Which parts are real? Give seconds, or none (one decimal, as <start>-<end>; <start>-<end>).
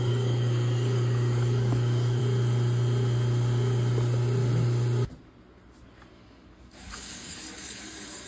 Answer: 2.2-6.1